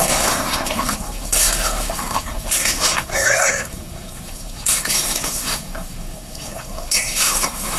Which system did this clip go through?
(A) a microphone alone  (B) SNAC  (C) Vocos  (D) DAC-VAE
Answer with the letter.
B